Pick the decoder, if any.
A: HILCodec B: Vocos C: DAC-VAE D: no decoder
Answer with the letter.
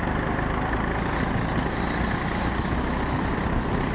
D